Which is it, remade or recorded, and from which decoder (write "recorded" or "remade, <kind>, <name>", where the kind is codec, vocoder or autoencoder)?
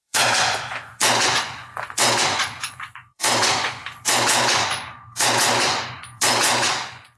remade, vocoder, Vocos